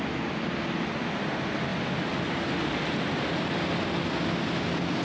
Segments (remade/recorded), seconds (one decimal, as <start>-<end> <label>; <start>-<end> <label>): 0.0-5.0 recorded